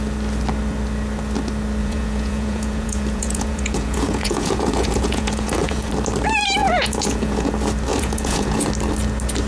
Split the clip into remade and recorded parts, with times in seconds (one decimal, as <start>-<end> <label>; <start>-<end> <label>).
0.0-1.8 recorded; 1.8-5.9 remade; 5.9-6.6 recorded; 6.6-7.5 remade; 7.5-7.9 recorded; 7.9-8.6 remade; 8.6-9.5 recorded